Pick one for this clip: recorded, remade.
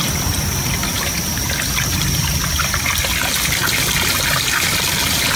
recorded